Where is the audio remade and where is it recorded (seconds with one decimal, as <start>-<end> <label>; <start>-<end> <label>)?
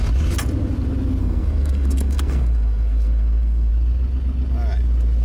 0.0-1.2 recorded; 1.2-3.7 remade; 3.7-5.2 recorded